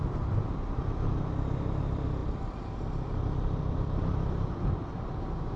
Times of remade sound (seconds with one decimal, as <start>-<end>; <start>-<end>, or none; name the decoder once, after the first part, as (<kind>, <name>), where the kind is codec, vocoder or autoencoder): 0.0-0.8 (vocoder, BigVGAN v2); 1.8-5.6